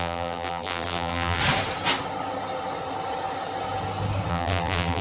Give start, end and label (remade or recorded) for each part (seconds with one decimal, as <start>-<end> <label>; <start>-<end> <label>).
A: 0.0-1.4 remade; 1.4-4.3 recorded; 4.3-5.0 remade